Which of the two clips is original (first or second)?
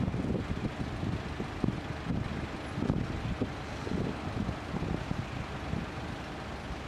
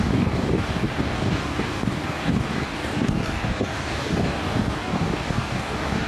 first